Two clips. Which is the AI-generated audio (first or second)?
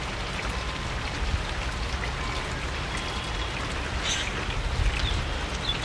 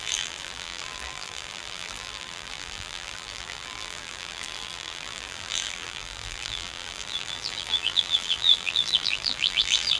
second